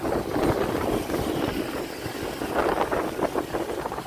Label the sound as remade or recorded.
recorded